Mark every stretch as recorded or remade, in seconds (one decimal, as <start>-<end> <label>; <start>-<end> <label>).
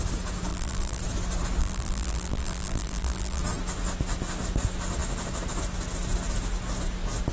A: 0.0-0.5 recorded; 0.5-1.0 remade; 1.0-1.6 recorded; 1.6-3.4 remade; 3.4-7.3 recorded